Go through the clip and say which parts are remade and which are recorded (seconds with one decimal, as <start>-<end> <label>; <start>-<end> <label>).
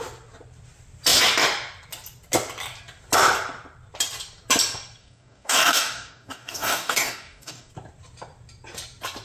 0.0-5.0 recorded; 5.0-7.7 remade; 7.7-9.2 recorded